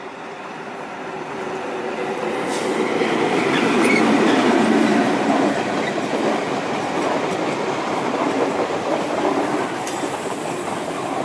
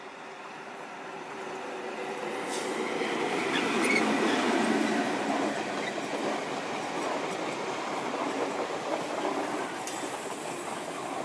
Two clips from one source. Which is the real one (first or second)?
second